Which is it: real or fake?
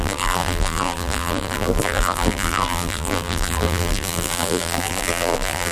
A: fake